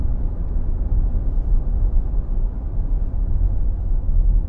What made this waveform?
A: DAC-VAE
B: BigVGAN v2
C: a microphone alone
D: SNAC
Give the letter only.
C